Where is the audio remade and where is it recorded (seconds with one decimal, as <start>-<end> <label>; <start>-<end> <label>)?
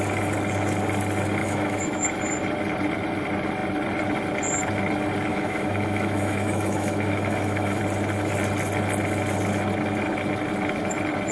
0.0-1.4 recorded; 1.4-2.2 remade; 2.2-5.3 recorded; 5.3-7.8 remade; 7.8-11.3 recorded